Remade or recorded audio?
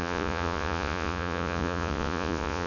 remade